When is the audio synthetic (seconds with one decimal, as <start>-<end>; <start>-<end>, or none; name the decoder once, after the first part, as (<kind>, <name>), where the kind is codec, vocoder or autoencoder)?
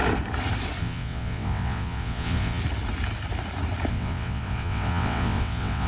0.8-2.6 (vocoder, WaveNeXt); 3.9-5.9